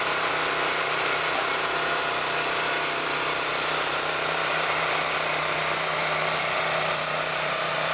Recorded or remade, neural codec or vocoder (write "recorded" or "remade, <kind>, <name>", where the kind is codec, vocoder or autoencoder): remade, vocoder, BigVGAN v2